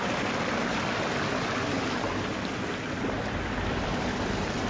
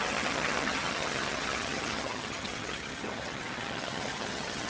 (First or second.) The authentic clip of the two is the first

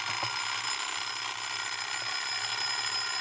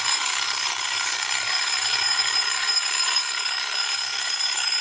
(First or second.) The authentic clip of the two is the first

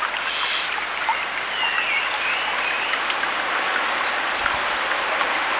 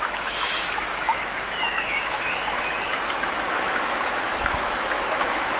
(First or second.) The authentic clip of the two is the first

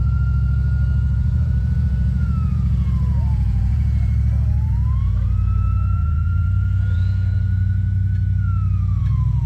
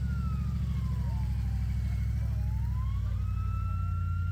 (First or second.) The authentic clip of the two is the second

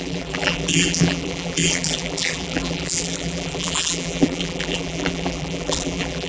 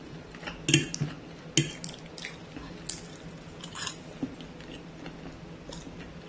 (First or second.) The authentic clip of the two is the second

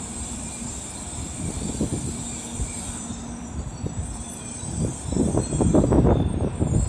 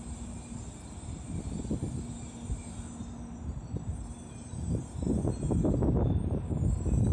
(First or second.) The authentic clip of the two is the second